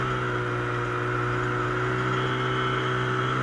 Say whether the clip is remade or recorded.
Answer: recorded